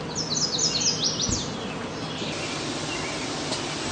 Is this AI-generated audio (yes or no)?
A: no